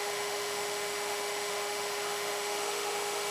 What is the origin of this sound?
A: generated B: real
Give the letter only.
A